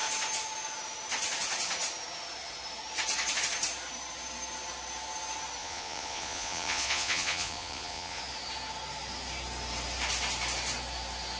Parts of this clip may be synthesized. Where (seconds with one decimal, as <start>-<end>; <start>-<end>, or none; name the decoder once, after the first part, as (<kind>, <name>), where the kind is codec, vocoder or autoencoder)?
5.6-8.2 (vocoder, Vocos)